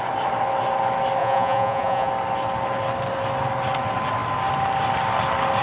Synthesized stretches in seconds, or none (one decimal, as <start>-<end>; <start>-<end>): 1.2-2.1